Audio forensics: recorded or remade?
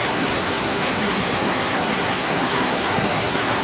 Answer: remade